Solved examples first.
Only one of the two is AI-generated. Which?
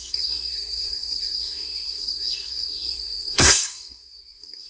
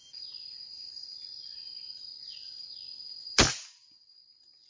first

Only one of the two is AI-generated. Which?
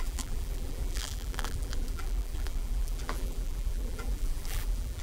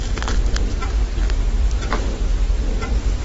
first